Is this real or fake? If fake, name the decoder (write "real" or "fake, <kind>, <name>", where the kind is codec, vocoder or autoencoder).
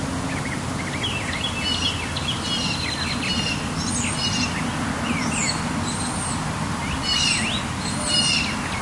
real